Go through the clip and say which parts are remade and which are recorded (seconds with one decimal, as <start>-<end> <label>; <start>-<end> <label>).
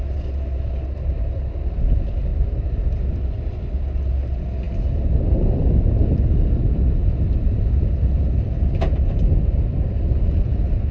0.0-10.9 recorded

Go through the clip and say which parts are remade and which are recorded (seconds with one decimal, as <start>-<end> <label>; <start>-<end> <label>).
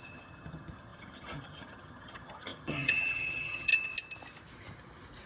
0.0-3.7 remade; 3.7-5.3 recorded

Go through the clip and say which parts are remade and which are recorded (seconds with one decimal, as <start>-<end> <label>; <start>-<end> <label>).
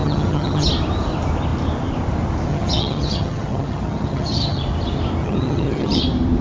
0.0-0.7 remade; 0.7-2.5 recorded; 2.5-4.6 remade; 4.6-5.2 recorded; 5.2-6.0 remade; 6.0-6.4 recorded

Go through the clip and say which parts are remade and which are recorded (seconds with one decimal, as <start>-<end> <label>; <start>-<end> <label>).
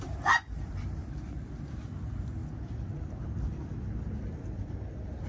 0.0-5.3 recorded